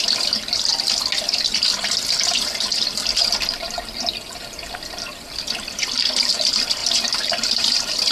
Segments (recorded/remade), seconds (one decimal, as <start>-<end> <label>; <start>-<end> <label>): 0.0-6.8 recorded; 6.8-8.1 remade